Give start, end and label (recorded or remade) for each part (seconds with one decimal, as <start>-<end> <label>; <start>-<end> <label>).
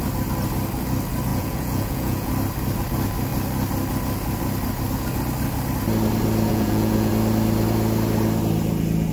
0.0-1.3 recorded; 1.3-2.3 remade; 2.3-6.5 recorded; 6.5-7.1 remade; 7.1-9.1 recorded